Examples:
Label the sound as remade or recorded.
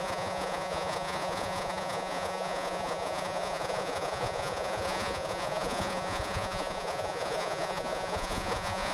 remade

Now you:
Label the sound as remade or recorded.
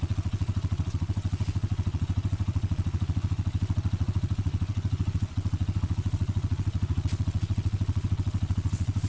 remade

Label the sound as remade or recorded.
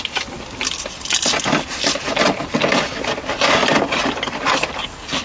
recorded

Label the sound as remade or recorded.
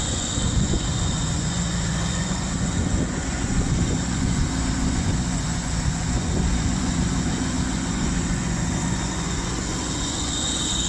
remade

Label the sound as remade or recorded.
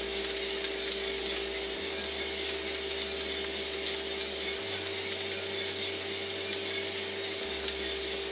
recorded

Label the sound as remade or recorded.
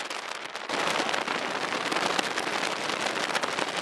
recorded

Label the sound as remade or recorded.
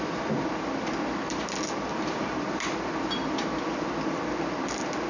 recorded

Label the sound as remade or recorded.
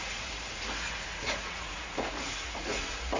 remade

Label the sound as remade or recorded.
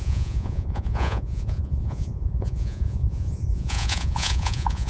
remade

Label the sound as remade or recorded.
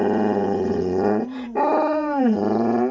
remade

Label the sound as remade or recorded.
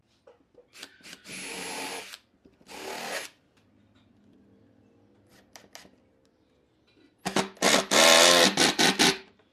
recorded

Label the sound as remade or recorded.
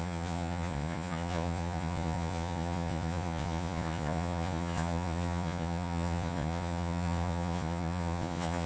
remade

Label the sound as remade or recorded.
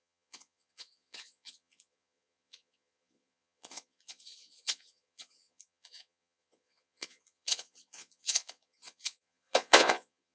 remade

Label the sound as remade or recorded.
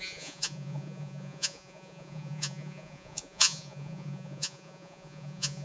remade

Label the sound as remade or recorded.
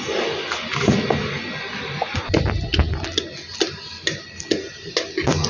recorded